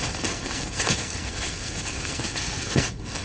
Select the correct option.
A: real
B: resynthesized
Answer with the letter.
B